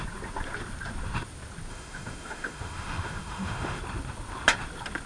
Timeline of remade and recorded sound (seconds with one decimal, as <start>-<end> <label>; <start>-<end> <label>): 0.0-1.7 recorded; 1.7-3.8 remade; 3.8-5.1 recorded